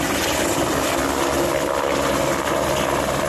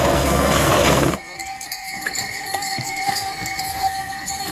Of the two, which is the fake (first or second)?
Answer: second